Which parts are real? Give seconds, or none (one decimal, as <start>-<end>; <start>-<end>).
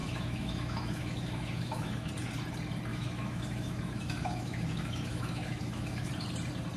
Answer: 2.1-2.9; 6.1-6.8